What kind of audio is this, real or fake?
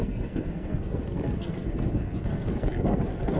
fake